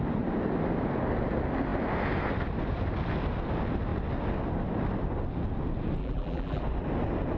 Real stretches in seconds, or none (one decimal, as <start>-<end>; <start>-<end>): 0.0-6.0; 6.6-7.4